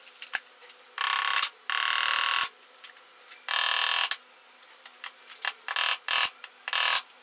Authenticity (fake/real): real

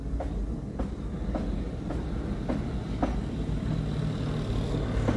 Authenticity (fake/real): real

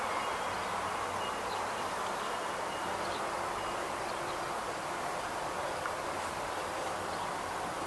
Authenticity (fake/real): real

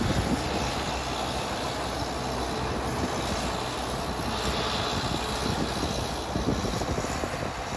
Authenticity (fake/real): real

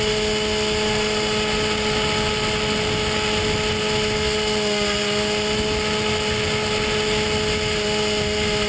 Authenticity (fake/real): real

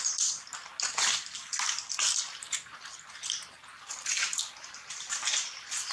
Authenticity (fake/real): real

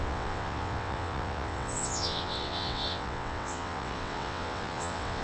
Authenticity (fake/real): fake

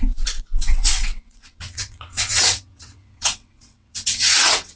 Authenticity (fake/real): fake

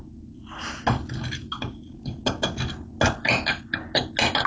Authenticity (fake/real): real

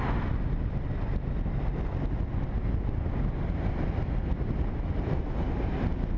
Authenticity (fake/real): real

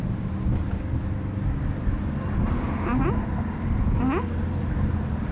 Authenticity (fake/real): real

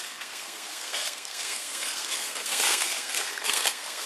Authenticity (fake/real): fake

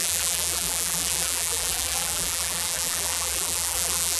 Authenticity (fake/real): fake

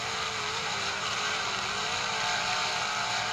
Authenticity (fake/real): real